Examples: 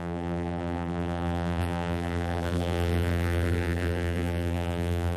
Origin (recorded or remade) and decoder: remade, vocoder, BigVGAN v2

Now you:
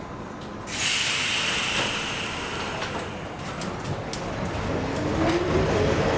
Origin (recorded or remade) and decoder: recorded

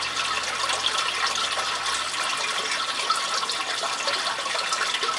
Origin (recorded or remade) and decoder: recorded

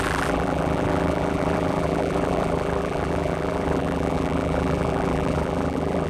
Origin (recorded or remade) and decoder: remade, vocoder, BigVGAN v2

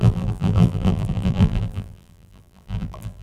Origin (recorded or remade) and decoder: remade, vocoder, BigVGAN v2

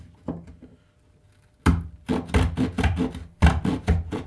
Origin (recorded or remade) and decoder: recorded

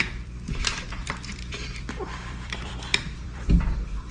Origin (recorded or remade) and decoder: remade, vocoder, BigVGAN v2